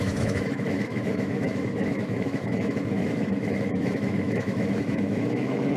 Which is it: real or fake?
fake